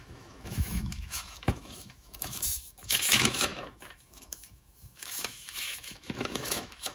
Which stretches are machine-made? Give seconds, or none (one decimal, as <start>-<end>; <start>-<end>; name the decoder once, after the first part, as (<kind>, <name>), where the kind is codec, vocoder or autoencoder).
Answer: 0.0-6.9 (autoencoder, DAC-VAE)